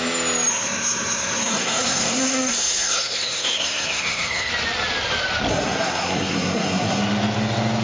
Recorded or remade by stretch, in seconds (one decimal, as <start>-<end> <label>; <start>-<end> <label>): 0.0-0.5 recorded; 0.5-4.5 remade; 4.5-5.5 recorded; 5.5-7.0 remade; 7.0-7.8 recorded